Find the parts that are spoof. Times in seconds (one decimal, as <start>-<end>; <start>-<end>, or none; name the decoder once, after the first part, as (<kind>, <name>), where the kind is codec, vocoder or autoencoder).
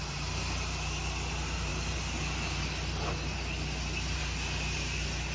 none